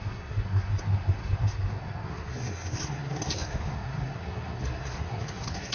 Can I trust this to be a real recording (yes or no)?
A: no